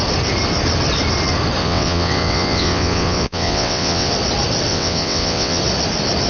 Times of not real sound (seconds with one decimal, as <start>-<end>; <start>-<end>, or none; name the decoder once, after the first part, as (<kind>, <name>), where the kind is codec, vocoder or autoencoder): 1.6-4.1 (vocoder, WaveNeXt); 4.7-5.6

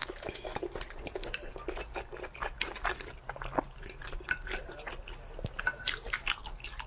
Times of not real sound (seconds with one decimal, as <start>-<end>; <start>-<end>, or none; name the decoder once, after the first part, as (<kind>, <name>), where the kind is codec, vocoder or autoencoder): 0.0-0.6 (autoencoder, DAC-VAE)

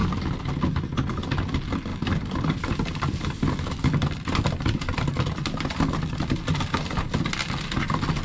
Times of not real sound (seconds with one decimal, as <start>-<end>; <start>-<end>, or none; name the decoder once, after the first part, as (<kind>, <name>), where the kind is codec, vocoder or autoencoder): 1.9-6.8 (vocoder, BigVGAN v2)

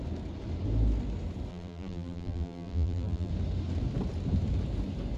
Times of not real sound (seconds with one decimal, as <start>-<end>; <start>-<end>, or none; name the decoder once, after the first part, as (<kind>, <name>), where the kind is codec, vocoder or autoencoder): 1.5-3.3 (vocoder, BigVGAN v2)

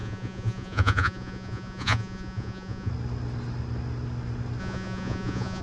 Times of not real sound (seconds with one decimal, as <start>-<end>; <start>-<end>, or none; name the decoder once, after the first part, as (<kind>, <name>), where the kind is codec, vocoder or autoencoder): 0.0-2.9 (vocoder, Vocos); 4.6-5.6

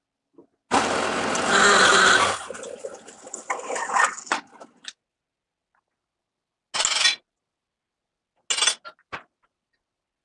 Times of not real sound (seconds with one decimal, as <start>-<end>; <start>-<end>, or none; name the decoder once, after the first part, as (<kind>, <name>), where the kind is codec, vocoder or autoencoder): none

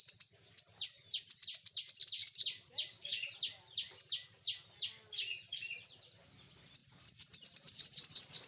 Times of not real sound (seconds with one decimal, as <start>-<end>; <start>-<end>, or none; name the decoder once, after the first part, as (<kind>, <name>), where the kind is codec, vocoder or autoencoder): 2.2-3.4 (vocoder, BigVGAN v2); 5.3-6.1; 6.8-8.5

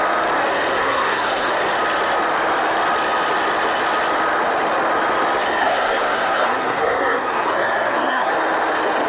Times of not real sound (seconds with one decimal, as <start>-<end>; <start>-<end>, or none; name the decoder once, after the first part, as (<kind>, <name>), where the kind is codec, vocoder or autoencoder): 0.7-1.5 (codec, SNAC); 5.6-8.3